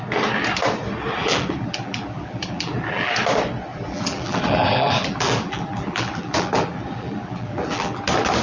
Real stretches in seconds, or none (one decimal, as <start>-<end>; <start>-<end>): 0.0-1.2; 3.1-3.7; 8.0-8.4